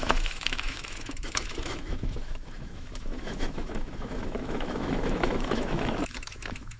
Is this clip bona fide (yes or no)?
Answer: no